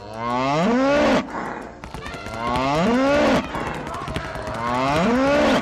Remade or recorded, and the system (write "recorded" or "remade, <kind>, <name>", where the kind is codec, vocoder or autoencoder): recorded